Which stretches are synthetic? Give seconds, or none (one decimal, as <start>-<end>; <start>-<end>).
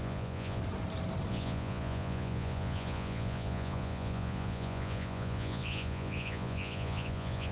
0.0-0.6; 1.3-7.5